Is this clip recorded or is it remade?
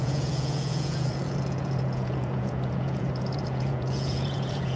remade